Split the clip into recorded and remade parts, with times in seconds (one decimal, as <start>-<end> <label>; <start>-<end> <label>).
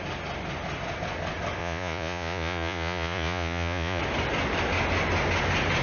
0.0-1.6 recorded; 1.6-4.0 remade; 4.0-5.8 recorded